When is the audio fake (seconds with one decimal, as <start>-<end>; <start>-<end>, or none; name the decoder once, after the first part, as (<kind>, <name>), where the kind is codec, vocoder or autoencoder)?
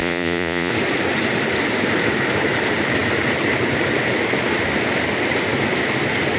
0.0-0.7 (vocoder, Vocos)